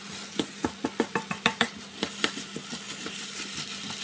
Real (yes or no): no